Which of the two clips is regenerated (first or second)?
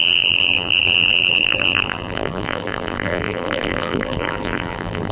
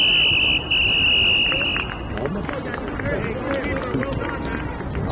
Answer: first